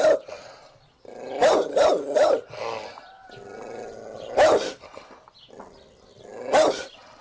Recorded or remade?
recorded